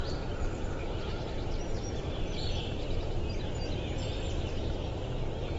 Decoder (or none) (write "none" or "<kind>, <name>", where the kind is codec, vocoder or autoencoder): vocoder, BigVGAN v2